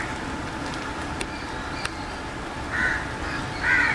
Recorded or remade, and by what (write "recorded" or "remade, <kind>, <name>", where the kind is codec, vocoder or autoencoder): recorded